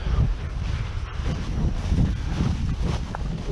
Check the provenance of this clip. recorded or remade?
recorded